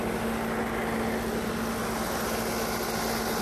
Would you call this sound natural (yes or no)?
yes